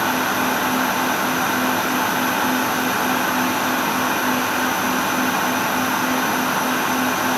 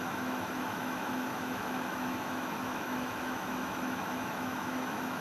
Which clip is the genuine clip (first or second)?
first